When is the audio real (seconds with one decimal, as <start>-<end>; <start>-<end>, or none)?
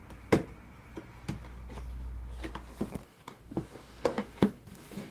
0.0-3.0